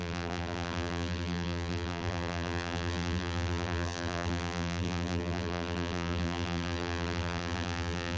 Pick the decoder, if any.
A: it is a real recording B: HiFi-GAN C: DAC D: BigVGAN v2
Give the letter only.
D